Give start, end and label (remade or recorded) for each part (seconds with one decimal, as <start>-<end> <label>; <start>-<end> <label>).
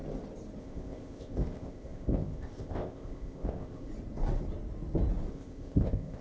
0.0-0.6 recorded; 0.6-3.9 remade; 3.9-5.3 recorded; 5.3-6.2 remade